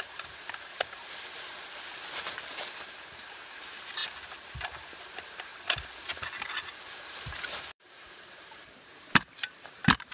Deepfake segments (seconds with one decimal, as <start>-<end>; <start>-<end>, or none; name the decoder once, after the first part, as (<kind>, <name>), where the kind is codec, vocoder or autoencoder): 0.0-4.0 (vocoder, BigVGAN v2); 4.9-5.5; 6.9-10.1